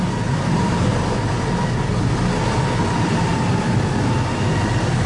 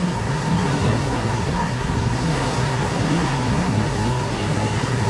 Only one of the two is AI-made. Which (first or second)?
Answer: second